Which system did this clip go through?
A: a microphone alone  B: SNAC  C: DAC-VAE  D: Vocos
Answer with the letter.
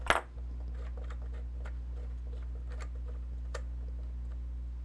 A